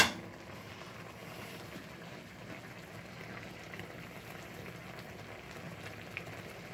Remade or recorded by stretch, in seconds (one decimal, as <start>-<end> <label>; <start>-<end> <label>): 0.0-6.7 recorded